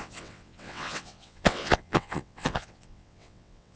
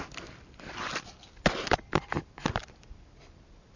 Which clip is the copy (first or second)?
first